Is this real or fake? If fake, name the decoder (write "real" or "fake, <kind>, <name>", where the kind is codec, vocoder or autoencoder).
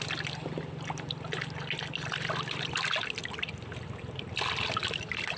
real